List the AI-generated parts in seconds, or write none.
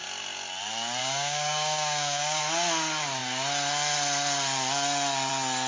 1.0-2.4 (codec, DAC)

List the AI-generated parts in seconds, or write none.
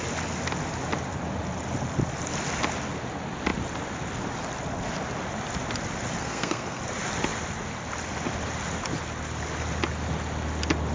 6.2-6.8 (codec, SNAC)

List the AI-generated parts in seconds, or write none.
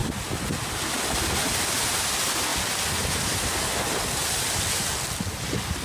none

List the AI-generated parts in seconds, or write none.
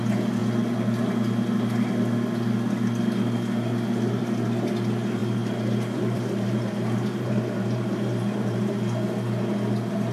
5.2-8.7 (vocoder, BigVGAN v2)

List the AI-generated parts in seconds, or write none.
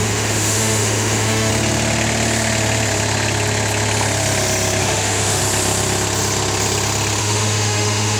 0.0-1.5 (autoencoder, DAC-VAE); 4.8-5.4; 7.2-8.2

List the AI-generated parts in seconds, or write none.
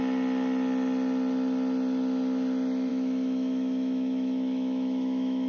2.9-5.5 (autoencoder, DAC-VAE)